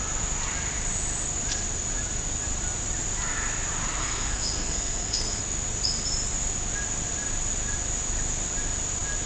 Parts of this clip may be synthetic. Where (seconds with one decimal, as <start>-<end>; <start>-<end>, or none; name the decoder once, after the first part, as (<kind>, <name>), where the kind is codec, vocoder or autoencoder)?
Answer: 4.0-5.4 (codec, SNAC)